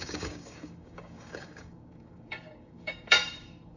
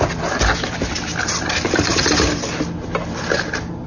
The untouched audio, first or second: second